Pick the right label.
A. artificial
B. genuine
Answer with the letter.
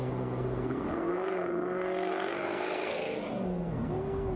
A